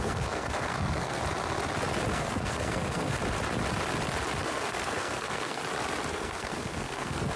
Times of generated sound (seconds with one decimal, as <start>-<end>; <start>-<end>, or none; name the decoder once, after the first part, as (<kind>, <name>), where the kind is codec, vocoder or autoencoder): 0.0-1.2 (codec, SNAC); 2.1-3.2; 4.4-5.6; 6.1-7.4